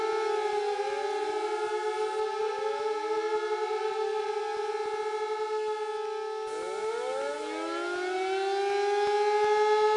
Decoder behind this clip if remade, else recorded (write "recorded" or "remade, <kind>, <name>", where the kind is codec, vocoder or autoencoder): recorded